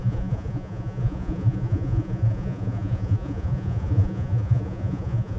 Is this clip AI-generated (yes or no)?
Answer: yes